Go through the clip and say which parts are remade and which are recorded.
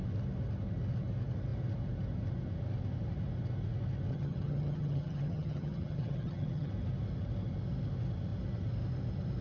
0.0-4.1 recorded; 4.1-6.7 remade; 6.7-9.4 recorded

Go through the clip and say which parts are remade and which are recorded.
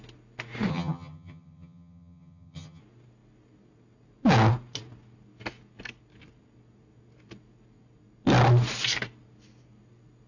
0.0-0.7 recorded; 0.7-2.8 remade; 2.8-10.3 recorded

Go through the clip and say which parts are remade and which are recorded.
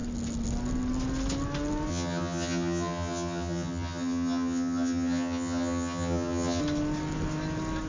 0.0-1.9 recorded; 1.9-6.6 remade; 6.6-7.9 recorded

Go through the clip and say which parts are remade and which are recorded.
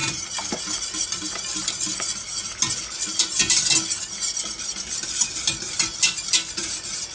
0.0-7.1 recorded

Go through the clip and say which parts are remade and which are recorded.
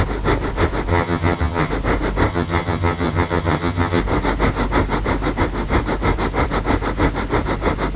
0.0-0.9 recorded; 0.9-1.7 remade; 1.7-2.3 recorded; 2.3-4.0 remade; 4.0-8.0 recorded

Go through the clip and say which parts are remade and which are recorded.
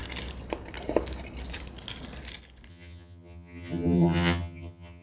0.0-2.7 recorded; 2.7-5.0 remade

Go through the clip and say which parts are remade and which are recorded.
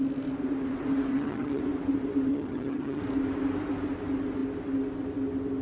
0.0-1.1 recorded; 1.1-1.6 remade; 1.6-2.3 recorded; 2.3-3.0 remade; 3.0-5.6 recorded